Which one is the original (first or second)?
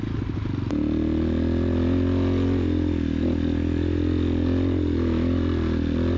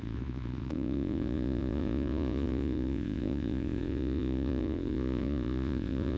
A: first